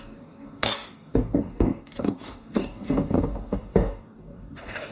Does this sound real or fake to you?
fake